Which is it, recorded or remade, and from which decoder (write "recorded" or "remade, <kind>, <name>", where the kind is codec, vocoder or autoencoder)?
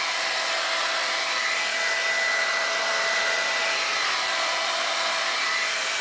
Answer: recorded